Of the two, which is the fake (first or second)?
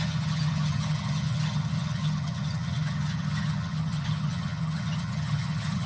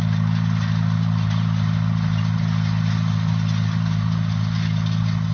first